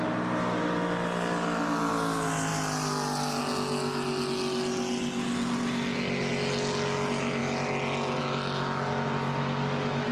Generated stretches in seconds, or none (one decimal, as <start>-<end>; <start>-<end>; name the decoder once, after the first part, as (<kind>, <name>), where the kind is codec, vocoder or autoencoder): none